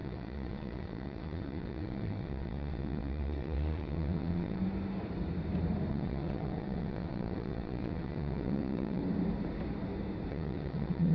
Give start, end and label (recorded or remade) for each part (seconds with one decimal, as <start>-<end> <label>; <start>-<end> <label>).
0.0-4.6 remade; 4.6-5.9 recorded; 5.9-9.0 remade; 9.0-10.3 recorded; 10.3-11.1 remade